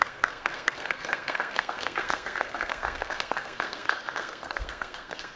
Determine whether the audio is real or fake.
fake